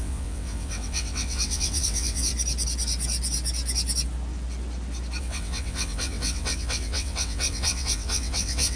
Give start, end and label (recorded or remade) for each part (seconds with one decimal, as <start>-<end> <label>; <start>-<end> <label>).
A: 0.0-2.3 remade; 2.3-5.2 recorded; 5.2-8.8 remade